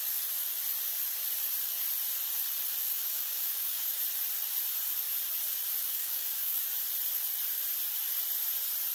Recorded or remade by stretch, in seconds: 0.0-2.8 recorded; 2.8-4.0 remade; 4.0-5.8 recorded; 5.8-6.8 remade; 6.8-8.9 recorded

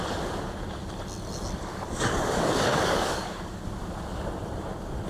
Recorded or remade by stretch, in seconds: 0.0-1.7 recorded; 1.7-3.6 remade; 3.6-5.1 recorded

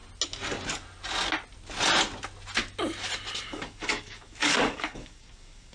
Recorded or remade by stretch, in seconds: 0.0-3.4 recorded; 3.4-5.7 remade

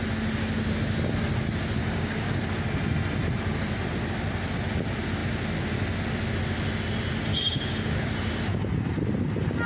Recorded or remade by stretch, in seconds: 0.0-1.8 recorded; 1.8-2.4 remade; 2.4-7.3 recorded; 7.3-8.1 remade; 8.1-9.7 recorded